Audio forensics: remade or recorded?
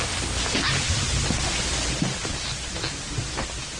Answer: recorded